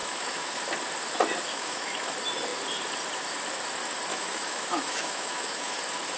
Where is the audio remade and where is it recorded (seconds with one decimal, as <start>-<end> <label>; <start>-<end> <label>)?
0.0-0.6 remade; 0.6-1.5 recorded; 1.5-2.1 remade; 2.1-4.1 recorded; 4.1-5.7 remade; 5.7-6.2 recorded